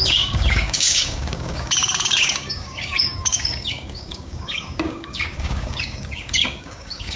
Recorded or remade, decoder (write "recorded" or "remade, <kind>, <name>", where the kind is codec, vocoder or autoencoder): remade, codec, DAC